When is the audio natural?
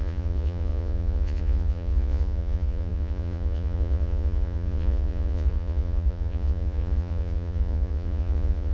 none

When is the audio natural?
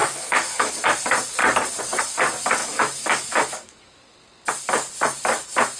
0.7-2.6; 4.0-5.8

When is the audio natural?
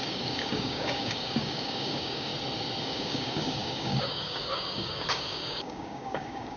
2.3-2.8